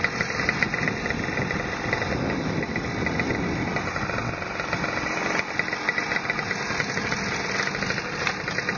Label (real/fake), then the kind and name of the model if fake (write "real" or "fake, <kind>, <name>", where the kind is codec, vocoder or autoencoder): real